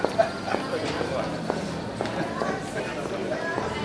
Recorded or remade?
recorded